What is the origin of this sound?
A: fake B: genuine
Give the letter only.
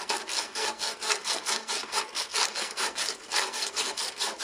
A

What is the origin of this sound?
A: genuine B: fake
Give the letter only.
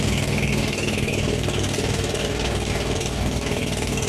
B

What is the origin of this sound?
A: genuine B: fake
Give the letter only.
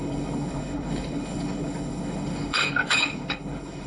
B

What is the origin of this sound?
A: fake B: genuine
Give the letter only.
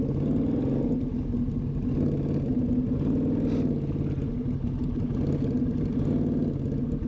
B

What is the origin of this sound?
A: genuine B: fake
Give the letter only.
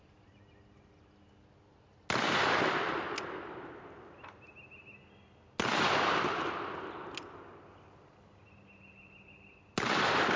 A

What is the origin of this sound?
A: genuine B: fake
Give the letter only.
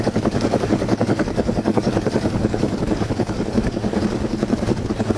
B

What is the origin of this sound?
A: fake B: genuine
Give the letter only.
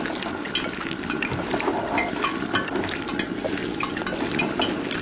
B